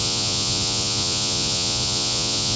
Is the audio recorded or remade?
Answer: remade